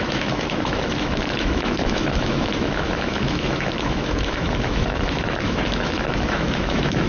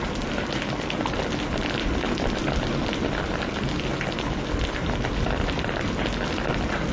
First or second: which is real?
second